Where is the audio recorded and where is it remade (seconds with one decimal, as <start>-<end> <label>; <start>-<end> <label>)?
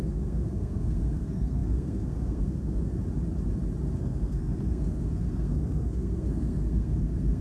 0.0-2.9 remade; 2.9-4.0 recorded; 4.0-7.4 remade